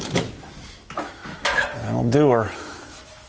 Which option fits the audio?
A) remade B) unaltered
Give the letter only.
A